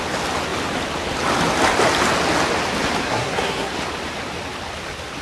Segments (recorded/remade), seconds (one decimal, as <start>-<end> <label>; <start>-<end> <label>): 0.0-3.0 recorded; 3.0-3.7 remade; 3.7-5.2 recorded